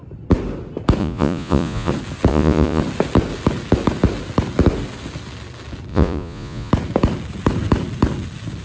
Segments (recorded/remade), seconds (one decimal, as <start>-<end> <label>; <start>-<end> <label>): 0.0-1.0 recorded; 1.0-1.9 remade; 1.9-2.3 recorded; 2.3-2.8 remade; 2.8-5.9 recorded; 5.9-6.7 remade; 6.7-8.6 recorded